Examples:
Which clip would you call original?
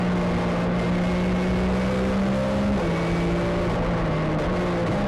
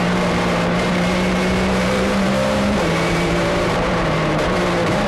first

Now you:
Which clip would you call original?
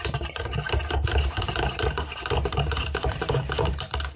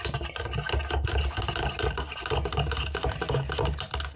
second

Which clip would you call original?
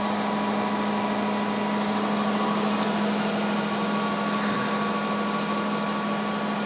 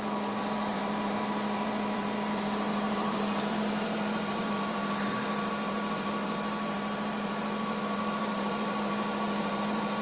first